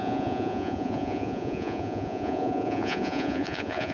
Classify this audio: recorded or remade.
remade